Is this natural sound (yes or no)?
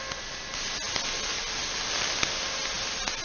yes